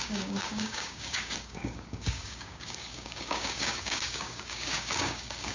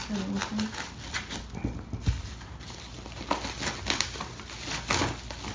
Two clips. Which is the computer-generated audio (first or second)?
first